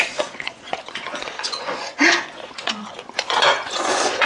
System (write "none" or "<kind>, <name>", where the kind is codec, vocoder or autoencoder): vocoder, Vocos